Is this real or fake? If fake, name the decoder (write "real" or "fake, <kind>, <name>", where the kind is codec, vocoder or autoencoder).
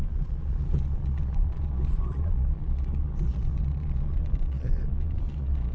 fake, vocoder, Vocos